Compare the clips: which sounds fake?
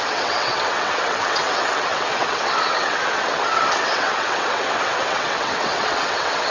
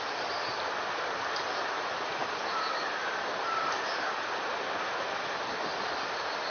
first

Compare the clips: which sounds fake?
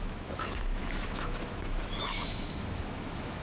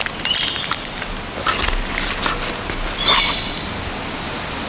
first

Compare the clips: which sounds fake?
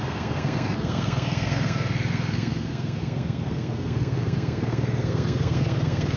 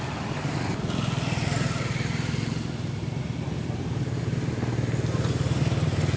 first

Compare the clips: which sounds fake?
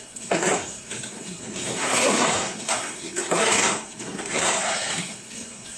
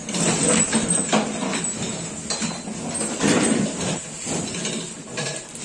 first